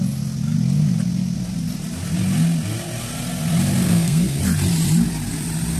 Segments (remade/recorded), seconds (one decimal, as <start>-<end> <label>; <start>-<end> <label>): 0.0-3.8 recorded; 3.8-4.4 remade; 4.4-5.8 recorded